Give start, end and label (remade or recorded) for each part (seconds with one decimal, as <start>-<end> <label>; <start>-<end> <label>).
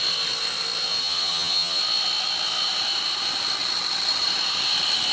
0.0-1.0 recorded; 1.0-1.8 remade; 1.8-5.1 recorded